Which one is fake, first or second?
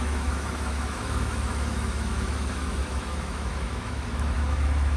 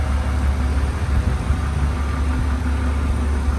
first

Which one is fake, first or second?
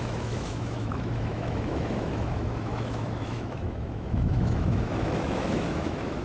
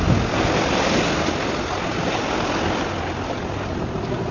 first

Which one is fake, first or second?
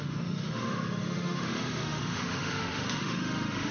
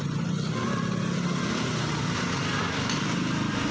first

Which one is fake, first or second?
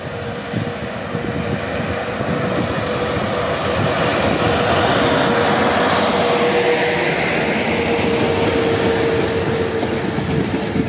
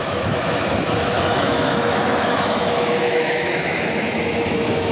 second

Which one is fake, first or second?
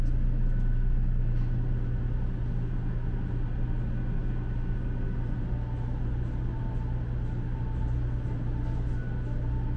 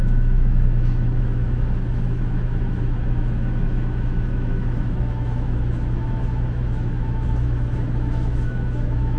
second